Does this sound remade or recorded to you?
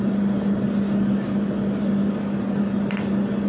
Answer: recorded